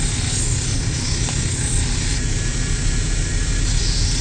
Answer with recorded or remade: recorded